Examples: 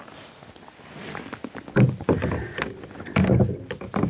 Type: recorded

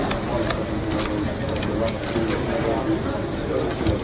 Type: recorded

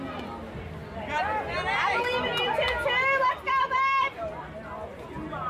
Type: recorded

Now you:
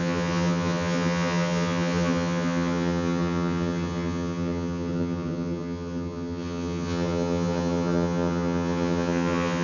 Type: remade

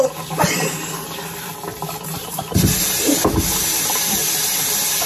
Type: recorded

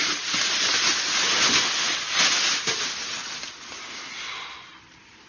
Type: recorded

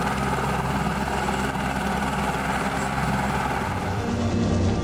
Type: recorded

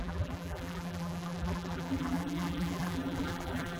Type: remade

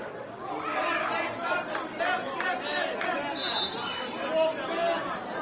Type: recorded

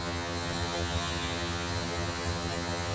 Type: remade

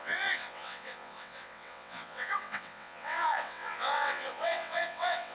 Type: remade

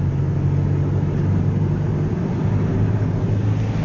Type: recorded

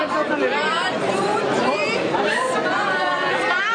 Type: remade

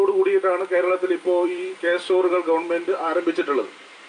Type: remade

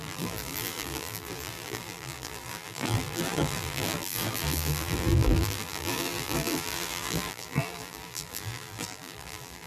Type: remade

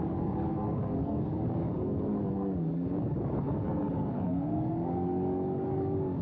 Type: remade